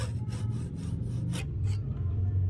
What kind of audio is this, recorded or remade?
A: remade